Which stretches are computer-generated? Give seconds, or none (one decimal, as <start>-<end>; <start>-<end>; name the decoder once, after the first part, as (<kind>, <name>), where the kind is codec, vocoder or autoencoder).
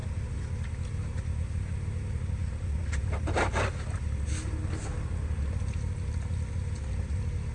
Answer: none